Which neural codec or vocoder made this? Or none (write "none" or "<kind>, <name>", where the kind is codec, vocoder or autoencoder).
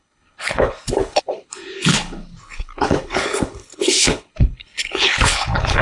codec, HILCodec